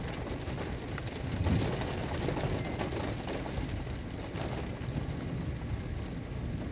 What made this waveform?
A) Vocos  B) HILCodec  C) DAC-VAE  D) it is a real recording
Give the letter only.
D